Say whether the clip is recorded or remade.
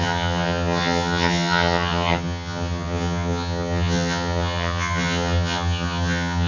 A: remade